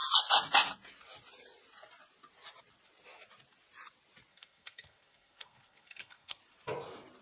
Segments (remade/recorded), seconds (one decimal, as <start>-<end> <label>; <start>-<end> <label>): 0.0-4.3 recorded; 4.3-6.4 remade; 6.4-7.2 recorded